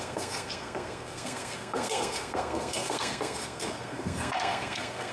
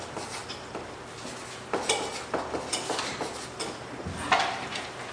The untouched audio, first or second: second